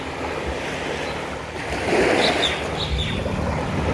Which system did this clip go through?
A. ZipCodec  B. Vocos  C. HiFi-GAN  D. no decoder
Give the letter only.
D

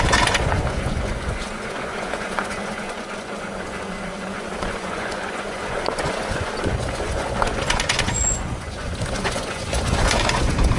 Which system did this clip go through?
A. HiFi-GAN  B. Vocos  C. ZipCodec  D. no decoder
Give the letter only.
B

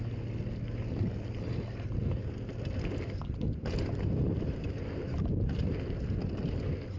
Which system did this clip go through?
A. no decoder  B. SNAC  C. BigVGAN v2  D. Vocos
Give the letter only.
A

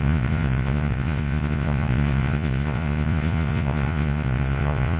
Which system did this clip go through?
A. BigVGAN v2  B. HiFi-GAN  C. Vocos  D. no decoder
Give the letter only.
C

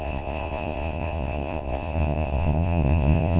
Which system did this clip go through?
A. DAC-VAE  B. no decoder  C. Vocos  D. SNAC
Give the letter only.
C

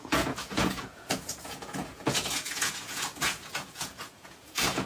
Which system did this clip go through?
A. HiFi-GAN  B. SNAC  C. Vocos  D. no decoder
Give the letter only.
C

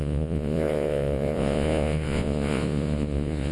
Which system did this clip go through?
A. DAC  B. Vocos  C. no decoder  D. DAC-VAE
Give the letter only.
B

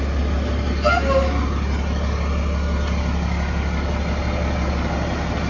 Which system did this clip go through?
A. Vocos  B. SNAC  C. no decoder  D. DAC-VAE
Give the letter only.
C